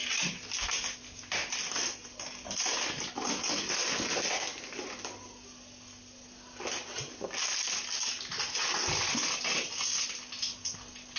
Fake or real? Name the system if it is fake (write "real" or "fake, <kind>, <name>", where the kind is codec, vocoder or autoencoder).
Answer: real